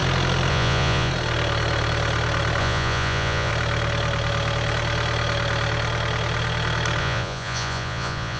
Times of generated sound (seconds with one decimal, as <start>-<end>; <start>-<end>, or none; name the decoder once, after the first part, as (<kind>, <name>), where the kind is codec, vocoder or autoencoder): 0.5-1.1 (vocoder, Vocos); 2.6-3.5; 7.0-8.4